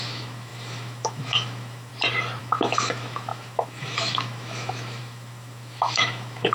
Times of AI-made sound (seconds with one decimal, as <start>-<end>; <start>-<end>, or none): 0.0-1.9; 2.4-6.5